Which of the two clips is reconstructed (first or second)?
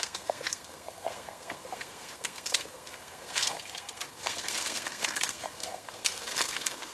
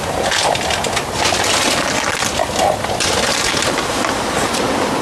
first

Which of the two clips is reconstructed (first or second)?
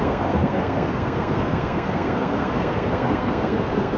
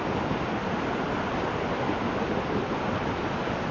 first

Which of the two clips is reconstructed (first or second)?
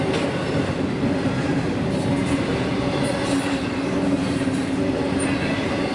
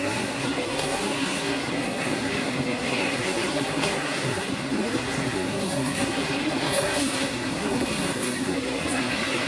second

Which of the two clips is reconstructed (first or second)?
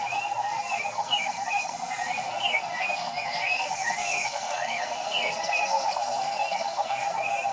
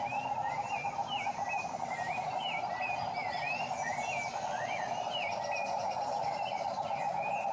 first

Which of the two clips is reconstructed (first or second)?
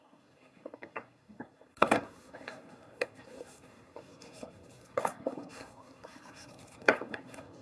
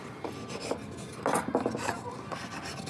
first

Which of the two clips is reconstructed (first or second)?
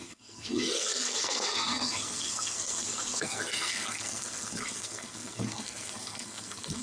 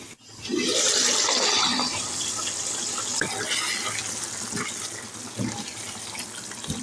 first